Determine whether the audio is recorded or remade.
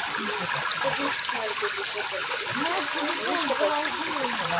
recorded